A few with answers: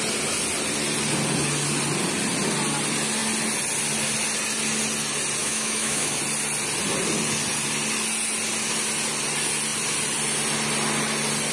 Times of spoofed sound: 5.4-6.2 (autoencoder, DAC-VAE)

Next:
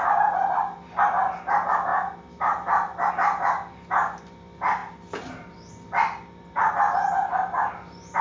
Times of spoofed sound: none

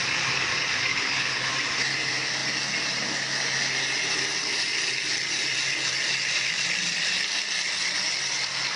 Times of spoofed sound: 0.9-1.5 (codec, HILCodec)

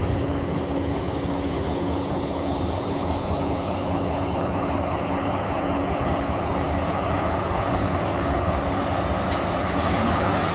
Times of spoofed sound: 0.0-8.8 (codec, HILCodec); 9.6-10.5

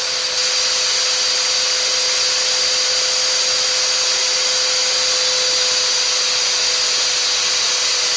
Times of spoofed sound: none

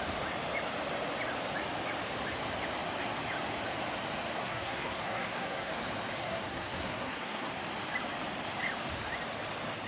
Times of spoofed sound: 4.4-5.7 (codec, SNAC); 6.2-7.5

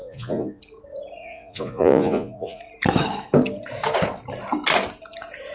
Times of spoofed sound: 0.0-0.6 (vocoder, Vocos); 1.2-2.6